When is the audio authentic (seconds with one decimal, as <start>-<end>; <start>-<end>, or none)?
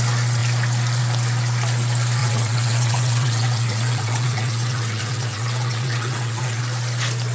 0.0-2.2; 6.6-7.3